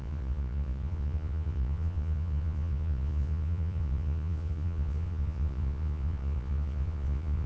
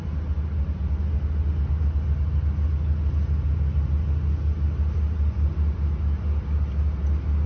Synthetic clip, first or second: first